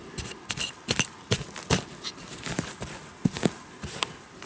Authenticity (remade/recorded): recorded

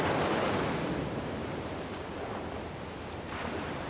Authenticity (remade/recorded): recorded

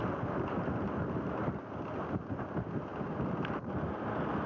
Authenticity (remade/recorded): recorded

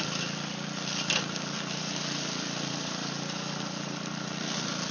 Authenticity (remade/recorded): remade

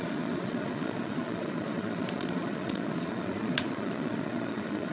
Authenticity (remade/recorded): remade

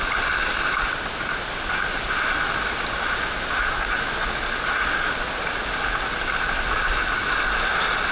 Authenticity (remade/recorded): recorded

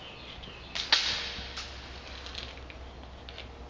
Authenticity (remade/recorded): recorded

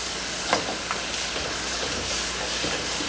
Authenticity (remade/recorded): remade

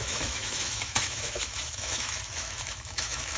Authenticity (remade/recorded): remade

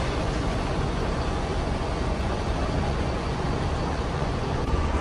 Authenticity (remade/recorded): remade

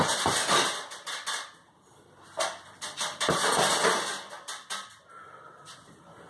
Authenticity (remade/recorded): recorded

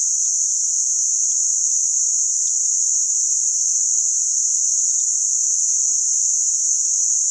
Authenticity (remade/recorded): recorded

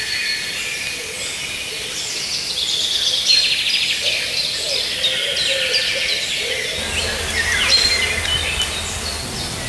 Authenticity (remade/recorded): recorded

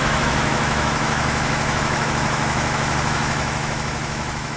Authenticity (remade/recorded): remade